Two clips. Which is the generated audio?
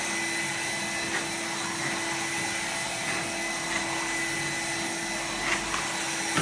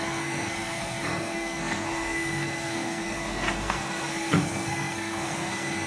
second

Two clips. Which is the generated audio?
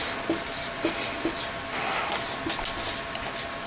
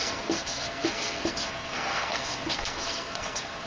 second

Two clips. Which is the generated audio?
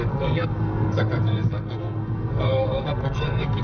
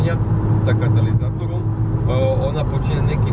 first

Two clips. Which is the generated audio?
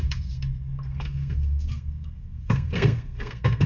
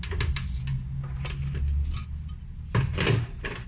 first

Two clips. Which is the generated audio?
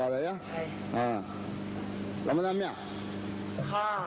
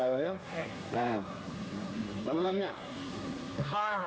second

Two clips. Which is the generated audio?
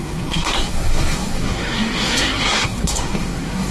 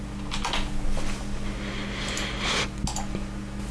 first